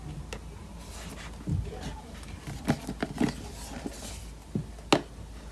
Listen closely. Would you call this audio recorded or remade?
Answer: recorded